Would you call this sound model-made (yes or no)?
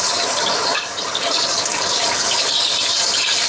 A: yes